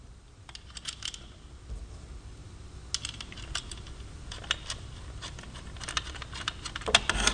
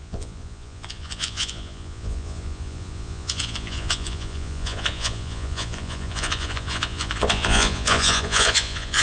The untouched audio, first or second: first